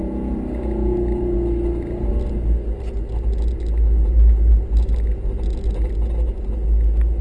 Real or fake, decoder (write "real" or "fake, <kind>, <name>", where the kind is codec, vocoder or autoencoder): real